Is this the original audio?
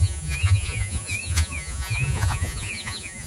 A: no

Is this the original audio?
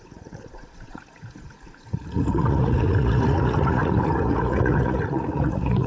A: no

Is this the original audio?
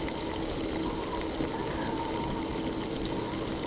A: yes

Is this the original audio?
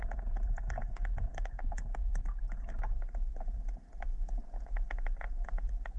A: no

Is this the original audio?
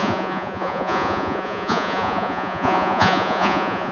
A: no